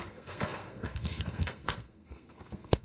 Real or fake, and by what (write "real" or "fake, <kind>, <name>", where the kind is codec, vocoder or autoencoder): fake, codec, SNAC